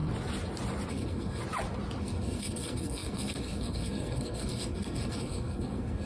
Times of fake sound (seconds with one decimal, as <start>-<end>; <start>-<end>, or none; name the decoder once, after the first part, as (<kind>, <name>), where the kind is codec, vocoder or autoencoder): 0.9-1.4 (codec, SNAC); 2.0-6.0